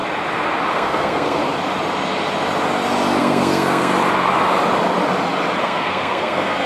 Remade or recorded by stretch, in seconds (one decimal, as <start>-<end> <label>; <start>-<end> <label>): 0.0-0.7 recorded; 0.7-1.4 remade; 1.4-3.2 recorded; 3.2-3.9 remade; 3.9-5.6 recorded; 5.6-6.7 remade